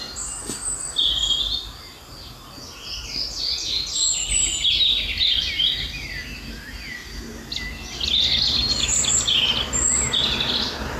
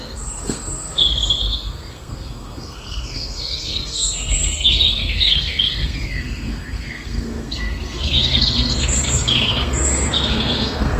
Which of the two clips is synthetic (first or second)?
second